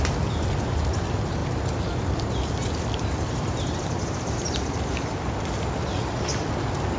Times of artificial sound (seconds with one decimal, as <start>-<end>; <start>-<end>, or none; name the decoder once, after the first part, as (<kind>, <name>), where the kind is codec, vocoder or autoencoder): 1.4-5.4 (vocoder, BigVGAN v2)